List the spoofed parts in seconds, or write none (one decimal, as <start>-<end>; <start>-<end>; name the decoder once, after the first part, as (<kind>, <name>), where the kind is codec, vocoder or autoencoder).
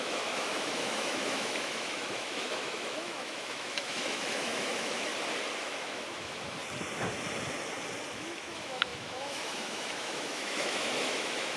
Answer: 0.0-5.1 (autoencoder, DAC-VAE); 5.6-6.6; 8.1-11.6